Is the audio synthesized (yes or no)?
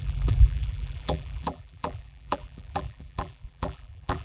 yes